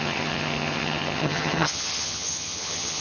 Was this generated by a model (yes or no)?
yes